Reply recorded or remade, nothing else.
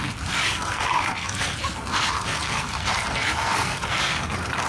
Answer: remade